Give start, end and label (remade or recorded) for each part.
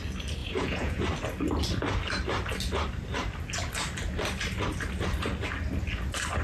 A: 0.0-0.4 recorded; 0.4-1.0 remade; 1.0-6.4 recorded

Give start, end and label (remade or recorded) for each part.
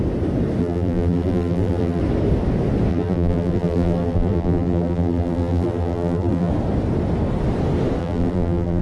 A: 0.0-0.6 recorded; 0.6-2.0 remade; 2.0-2.9 recorded; 2.9-6.5 remade; 6.5-8.0 recorded; 8.0-8.8 remade